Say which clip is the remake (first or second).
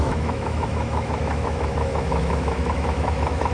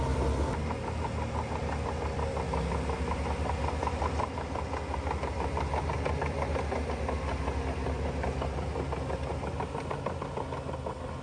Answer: first